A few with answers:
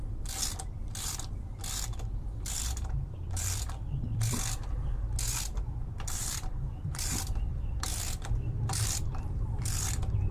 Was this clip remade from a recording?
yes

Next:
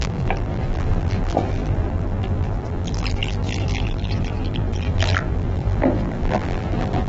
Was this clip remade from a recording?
yes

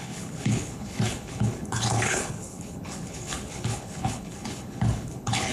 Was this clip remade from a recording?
yes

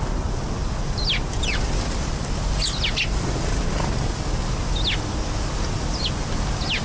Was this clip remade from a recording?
no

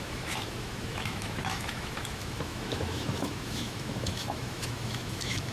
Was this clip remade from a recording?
yes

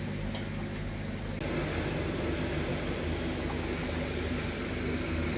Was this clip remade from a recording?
no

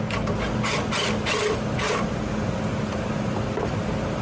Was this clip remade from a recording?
no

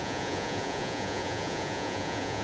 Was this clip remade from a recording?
yes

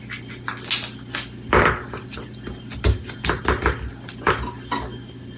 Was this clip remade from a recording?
no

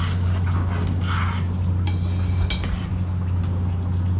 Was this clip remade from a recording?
no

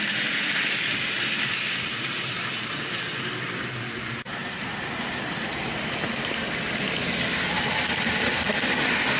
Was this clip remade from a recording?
no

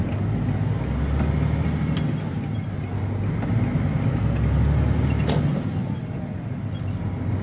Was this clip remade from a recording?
no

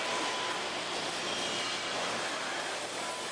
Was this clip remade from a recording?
no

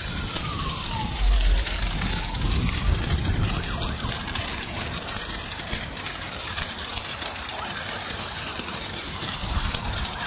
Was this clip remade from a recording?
yes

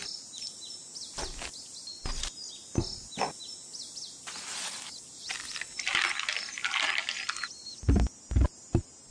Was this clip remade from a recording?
no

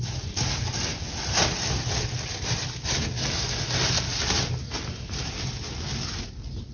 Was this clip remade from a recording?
no